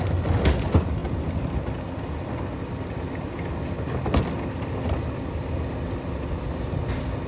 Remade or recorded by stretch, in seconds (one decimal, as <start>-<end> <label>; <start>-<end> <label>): 0.0-7.3 recorded